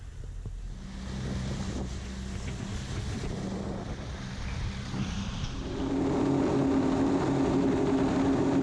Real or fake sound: real